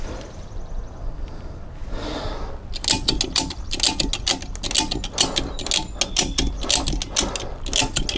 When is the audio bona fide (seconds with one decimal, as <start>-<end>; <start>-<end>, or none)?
0.0-8.2